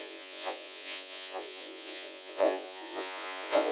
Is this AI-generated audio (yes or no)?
yes